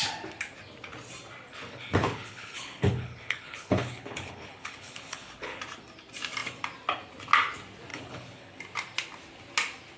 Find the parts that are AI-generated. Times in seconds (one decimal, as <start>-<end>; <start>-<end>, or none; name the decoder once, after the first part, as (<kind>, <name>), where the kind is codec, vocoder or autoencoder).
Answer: 1.5-5.6 (codec, HILCodec); 7.9-8.6